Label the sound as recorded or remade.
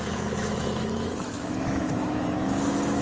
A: remade